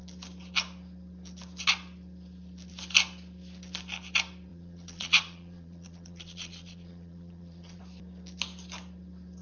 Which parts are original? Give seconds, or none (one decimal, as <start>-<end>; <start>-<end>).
0.0-4.5; 7.8-9.4